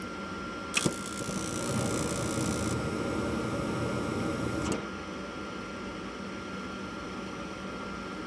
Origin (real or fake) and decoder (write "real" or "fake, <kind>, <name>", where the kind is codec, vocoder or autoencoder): real